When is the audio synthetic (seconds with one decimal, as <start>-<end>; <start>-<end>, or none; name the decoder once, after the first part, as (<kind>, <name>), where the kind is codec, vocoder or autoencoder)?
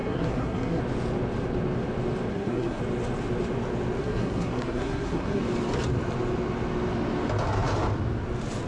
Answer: 0.0-0.8 (codec, SNAC); 2.3-2.8; 4.0-5.4